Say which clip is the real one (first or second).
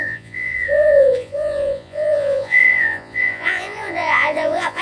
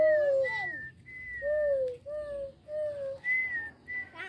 second